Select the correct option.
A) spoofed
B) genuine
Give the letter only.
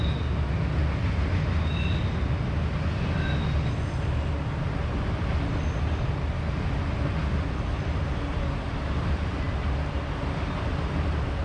B